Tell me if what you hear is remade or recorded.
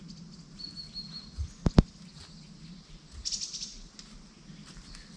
recorded